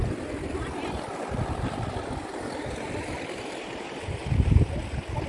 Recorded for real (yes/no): yes